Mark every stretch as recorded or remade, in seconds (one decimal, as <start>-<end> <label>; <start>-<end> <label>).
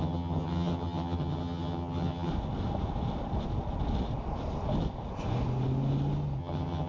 0.0-2.3 remade; 2.3-6.4 recorded; 6.4-6.9 remade